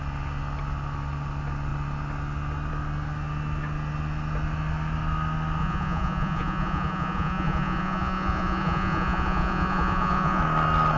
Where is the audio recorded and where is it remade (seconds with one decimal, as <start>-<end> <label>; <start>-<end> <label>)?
0.0-5.6 recorded; 5.6-10.4 remade; 10.4-11.0 recorded